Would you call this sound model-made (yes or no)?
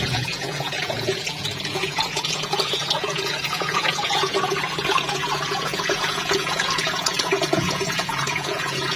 yes